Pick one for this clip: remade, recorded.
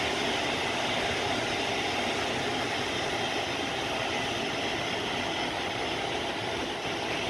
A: recorded